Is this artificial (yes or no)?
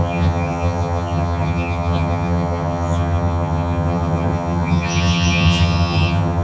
yes